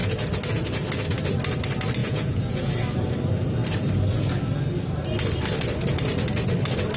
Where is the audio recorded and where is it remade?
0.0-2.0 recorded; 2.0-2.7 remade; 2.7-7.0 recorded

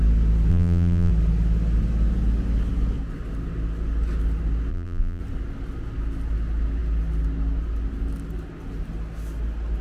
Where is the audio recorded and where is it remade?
0.0-0.5 recorded; 0.5-1.1 remade; 1.1-4.7 recorded; 4.7-5.2 remade; 5.2-9.8 recorded

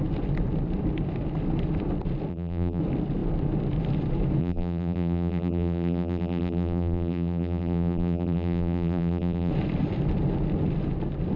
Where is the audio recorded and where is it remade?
0.0-2.3 recorded; 2.3-2.8 remade; 2.8-4.4 recorded; 4.4-9.5 remade; 9.5-11.4 recorded

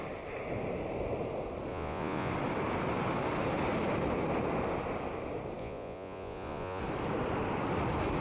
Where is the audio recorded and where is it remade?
0.0-1.7 recorded; 1.7-2.3 remade; 2.3-5.6 recorded; 5.6-6.8 remade; 6.8-8.2 recorded

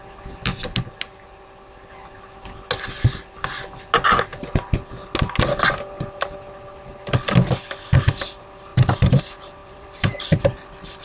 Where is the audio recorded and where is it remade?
0.0-8.7 recorded; 8.7-9.2 remade; 9.2-9.6 recorded; 9.6-10.2 remade; 10.2-11.0 recorded

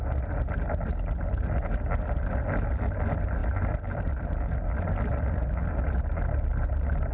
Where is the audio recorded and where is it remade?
0.0-7.1 recorded